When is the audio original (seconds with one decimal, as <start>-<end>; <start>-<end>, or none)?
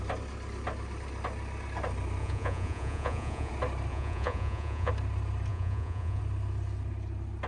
0.0-2.2; 3.5-3.9; 4.9-5.5; 6.2-7.5